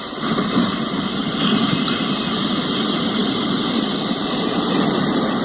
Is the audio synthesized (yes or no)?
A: yes